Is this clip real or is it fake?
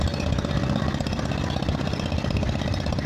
real